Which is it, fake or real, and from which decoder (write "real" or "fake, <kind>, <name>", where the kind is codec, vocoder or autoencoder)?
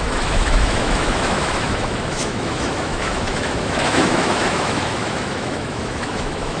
fake, autoencoder, DAC-VAE